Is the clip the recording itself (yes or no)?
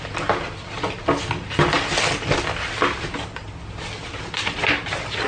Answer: yes